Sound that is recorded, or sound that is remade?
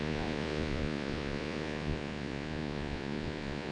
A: remade